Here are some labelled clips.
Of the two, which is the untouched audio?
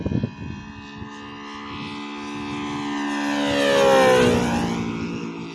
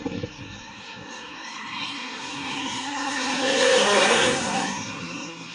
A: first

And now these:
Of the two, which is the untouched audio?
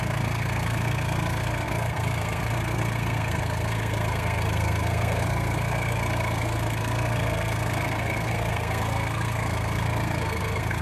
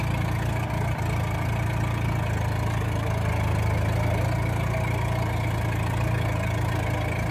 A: second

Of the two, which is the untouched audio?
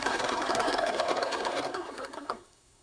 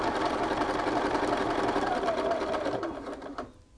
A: second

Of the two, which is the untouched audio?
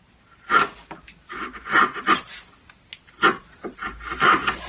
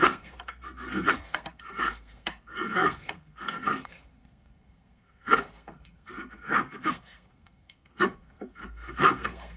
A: first